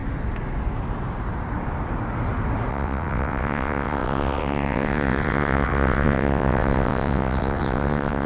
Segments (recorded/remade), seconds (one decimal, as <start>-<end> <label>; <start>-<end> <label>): 0.0-2.7 recorded; 2.7-8.3 remade